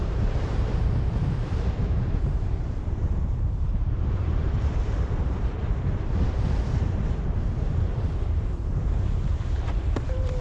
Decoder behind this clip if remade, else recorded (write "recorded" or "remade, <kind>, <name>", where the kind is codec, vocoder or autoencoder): remade, vocoder, BigVGAN v2